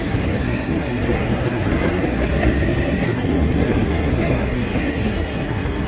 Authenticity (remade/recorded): remade